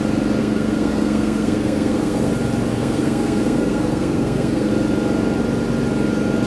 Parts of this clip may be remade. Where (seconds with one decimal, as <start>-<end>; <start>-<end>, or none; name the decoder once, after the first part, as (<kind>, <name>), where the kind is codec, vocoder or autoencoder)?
0.4-2.3 (codec, SNAC); 2.7-4.7